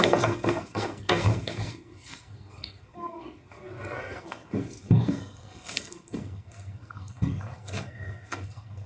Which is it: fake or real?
fake